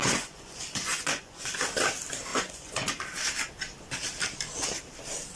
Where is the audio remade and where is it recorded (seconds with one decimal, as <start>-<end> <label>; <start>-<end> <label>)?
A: 0.0-1.6 remade; 1.6-2.3 recorded; 2.3-2.9 remade; 2.9-5.4 recorded